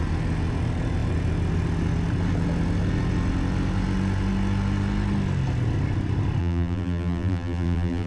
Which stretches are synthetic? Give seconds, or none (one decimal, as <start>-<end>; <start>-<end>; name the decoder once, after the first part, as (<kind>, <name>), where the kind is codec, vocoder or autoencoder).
6.4-8.1 (vocoder, BigVGAN v2)